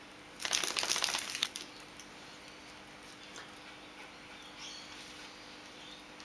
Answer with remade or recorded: recorded